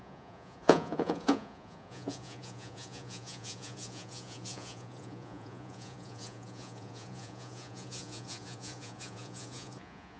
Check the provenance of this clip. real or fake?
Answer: fake